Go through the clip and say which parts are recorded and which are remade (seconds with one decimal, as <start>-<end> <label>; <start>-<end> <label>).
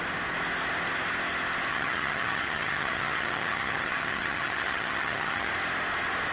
0.0-1.7 recorded; 1.7-5.5 remade; 5.5-6.3 recorded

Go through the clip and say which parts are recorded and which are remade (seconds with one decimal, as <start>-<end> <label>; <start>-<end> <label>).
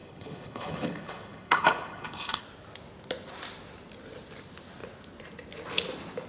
0.0-2.4 remade; 2.4-6.3 recorded